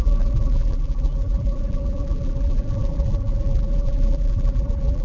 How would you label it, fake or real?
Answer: fake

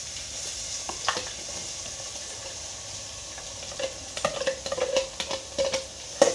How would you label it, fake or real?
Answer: real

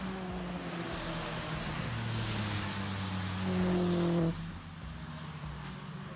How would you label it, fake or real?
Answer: real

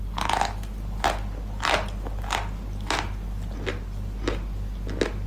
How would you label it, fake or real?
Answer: real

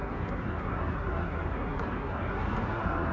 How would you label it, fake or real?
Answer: fake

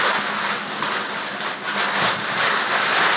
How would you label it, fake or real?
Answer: real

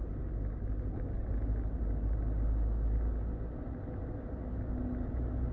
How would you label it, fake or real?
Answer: real